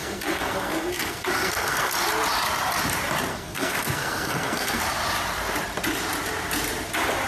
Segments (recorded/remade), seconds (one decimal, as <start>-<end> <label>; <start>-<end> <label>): 0.0-1.9 remade; 1.9-3.3 recorded; 3.3-4.8 remade; 4.8-7.3 recorded